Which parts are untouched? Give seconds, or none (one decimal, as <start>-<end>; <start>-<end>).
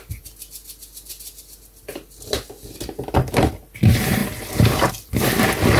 0.0-5.8